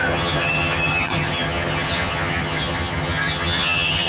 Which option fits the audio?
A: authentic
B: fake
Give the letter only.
B